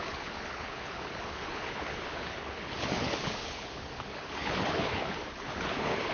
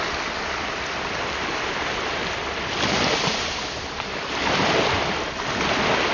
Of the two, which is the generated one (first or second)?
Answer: first